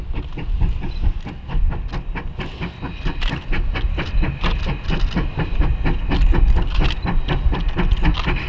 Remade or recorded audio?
recorded